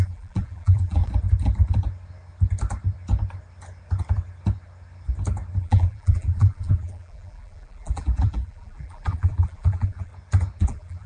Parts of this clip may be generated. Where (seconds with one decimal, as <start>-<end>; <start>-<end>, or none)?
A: 0.0-1.0; 5.6-10.1; 10.6-11.1